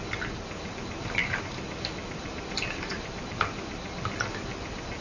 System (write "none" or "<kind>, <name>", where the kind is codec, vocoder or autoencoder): none